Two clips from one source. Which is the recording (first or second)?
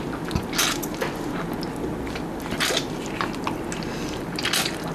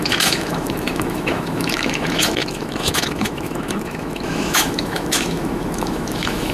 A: first